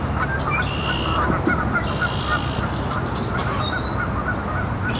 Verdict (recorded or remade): recorded